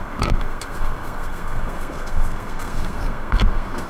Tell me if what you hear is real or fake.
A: fake